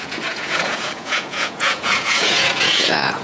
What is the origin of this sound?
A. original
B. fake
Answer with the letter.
B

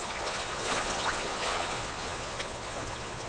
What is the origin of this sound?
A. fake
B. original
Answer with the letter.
A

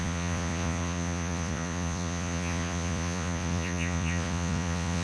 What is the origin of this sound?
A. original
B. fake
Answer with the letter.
B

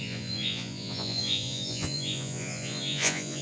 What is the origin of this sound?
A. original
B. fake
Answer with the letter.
B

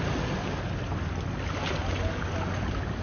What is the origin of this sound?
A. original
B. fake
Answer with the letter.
A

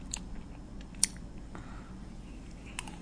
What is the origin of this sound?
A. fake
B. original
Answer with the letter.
B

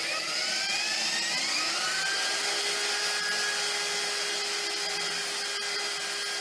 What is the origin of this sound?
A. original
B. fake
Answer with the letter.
A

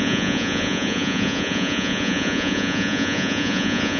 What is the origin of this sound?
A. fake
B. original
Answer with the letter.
A